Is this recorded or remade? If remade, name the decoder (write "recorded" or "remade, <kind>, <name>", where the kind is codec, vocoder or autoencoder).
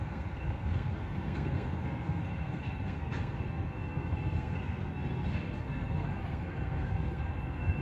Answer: remade, codec, SNAC